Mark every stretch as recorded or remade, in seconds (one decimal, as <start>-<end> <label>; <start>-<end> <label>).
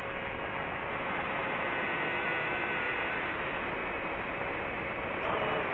0.0-5.7 recorded